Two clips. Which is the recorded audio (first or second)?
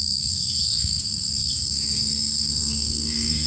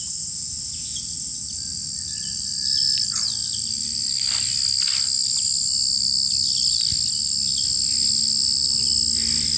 second